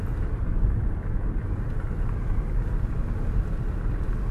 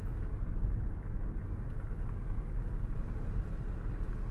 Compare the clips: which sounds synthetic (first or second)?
first